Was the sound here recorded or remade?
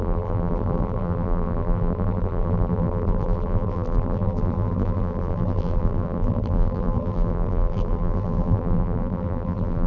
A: remade